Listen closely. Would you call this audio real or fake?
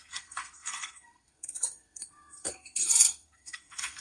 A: fake